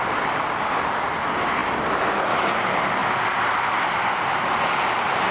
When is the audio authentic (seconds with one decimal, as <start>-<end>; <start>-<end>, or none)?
0.0-5.3